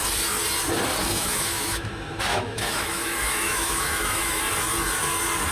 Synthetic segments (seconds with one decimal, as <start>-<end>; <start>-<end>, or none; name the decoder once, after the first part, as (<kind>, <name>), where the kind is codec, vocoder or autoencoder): 1.0-1.9 (autoencoder, DAC-VAE); 2.3-4.4